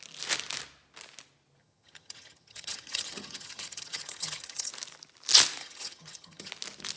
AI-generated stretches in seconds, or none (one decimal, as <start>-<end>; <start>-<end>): 1.6-4.7; 5.6-6.5